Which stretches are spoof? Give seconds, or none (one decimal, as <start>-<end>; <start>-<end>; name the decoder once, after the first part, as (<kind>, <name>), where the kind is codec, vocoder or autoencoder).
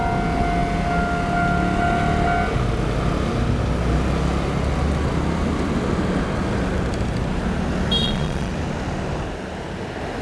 8.0-8.5 (vocoder, Vocos)